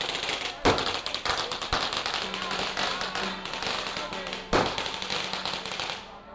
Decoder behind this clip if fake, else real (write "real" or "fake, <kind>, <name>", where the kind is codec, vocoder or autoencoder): real